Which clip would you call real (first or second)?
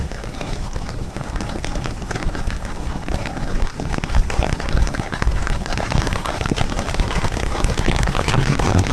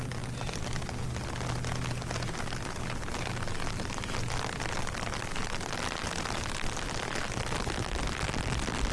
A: second